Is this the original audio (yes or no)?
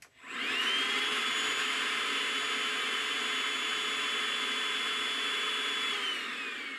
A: yes